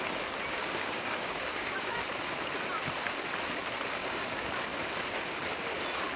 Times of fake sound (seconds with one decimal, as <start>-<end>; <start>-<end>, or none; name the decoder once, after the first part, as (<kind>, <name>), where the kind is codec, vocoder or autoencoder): 0.6-2.0 (codec, DAC); 4.0-4.5